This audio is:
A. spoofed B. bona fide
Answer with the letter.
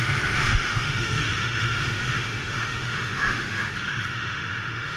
A